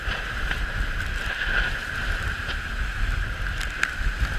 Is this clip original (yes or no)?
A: yes